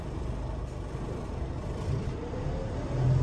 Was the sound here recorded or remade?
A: remade